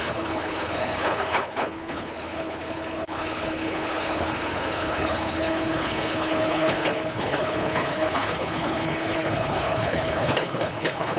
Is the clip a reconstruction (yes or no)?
yes